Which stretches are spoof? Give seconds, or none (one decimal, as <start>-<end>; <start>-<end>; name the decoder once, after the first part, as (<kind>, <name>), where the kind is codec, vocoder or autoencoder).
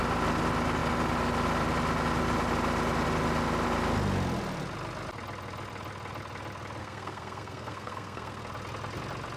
6.8-8.4 (codec, SNAC)